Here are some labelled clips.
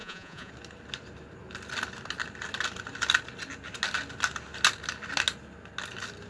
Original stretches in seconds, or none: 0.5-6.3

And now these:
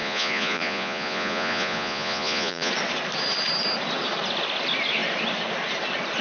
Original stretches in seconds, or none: 2.7-6.2

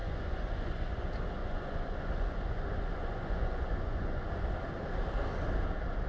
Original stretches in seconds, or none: 0.9-1.4; 4.3-6.1

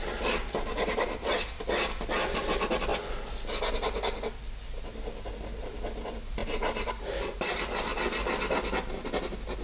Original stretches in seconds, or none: 0.0-9.6